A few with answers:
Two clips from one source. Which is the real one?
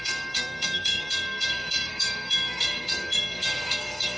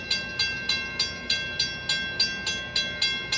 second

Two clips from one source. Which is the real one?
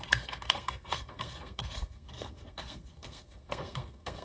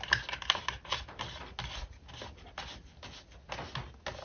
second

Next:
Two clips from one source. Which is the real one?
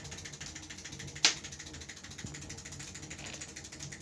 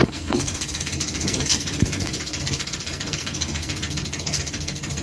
first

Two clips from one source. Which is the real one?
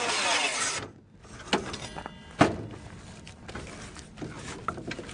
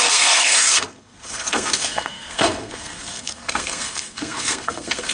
first